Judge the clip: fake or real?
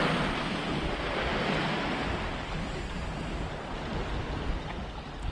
real